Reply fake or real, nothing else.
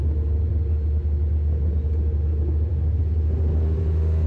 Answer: real